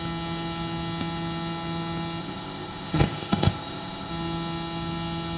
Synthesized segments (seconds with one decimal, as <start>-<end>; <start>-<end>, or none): 2.2-4.1

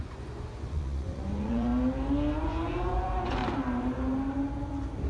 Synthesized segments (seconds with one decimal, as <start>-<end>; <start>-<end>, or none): 0.0-1.7; 2.4-3.4

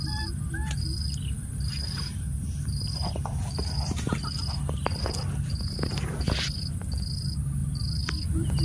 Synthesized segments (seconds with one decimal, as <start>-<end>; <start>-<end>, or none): none

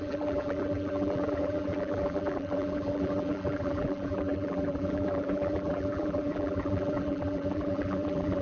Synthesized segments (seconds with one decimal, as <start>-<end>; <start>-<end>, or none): 0.0-8.4

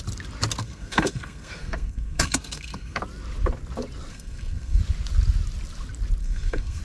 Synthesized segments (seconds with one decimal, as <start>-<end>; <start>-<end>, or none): 0.6-3.0; 4.1-4.8; 6.2-6.8

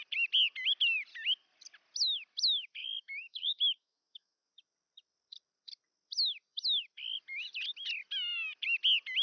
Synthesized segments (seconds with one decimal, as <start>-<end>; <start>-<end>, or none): 2.8-4.5

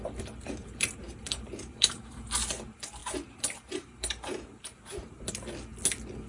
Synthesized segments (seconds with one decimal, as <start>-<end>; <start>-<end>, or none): 0.6-2.3; 3.0-5.3